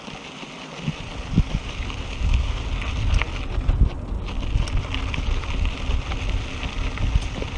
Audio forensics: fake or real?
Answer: real